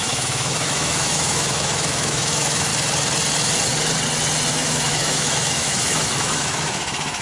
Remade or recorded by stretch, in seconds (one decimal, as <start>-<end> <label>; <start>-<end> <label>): 0.0-2.7 remade; 2.7-4.5 recorded; 4.5-7.2 remade